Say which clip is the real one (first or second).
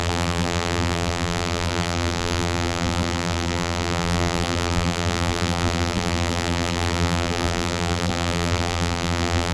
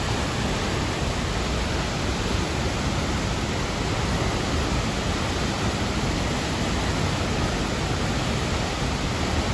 second